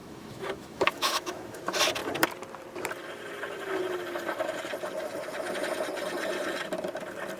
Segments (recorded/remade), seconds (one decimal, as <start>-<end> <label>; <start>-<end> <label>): 0.0-1.6 remade; 1.6-7.4 recorded